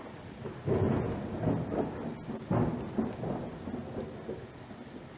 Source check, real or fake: real